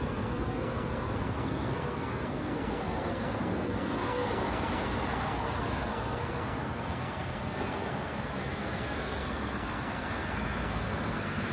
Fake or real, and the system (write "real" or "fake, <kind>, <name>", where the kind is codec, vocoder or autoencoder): fake, codec, SNAC